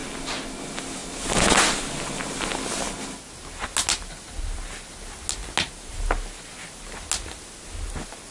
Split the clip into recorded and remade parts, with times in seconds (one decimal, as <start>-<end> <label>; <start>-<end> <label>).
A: 0.0-8.3 recorded